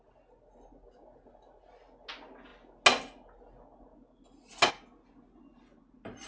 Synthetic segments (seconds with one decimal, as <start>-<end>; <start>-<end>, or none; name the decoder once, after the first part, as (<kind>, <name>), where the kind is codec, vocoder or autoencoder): 5.5-6.3 (vocoder, BigVGAN v2)